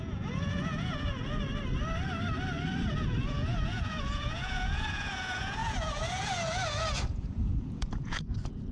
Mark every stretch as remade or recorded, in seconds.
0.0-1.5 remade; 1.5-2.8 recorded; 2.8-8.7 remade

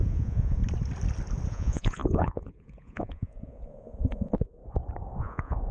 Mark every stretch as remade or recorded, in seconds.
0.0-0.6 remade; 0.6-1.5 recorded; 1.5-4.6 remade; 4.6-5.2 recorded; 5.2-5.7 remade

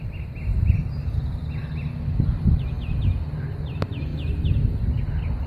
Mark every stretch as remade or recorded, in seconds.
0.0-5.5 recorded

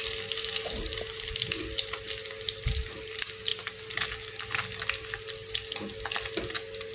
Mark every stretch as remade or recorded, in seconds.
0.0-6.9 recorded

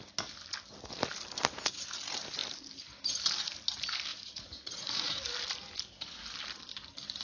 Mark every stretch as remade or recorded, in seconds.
0.0-4.1 recorded; 4.1-5.2 remade; 5.2-7.2 recorded

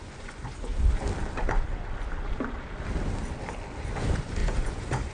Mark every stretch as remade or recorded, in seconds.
0.0-0.7 remade; 0.7-3.8 recorded; 3.8-5.1 remade

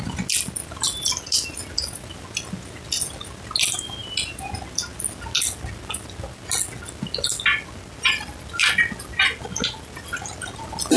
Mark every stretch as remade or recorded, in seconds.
0.0-11.0 recorded